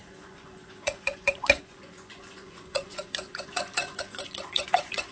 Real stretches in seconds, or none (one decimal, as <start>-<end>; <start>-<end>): none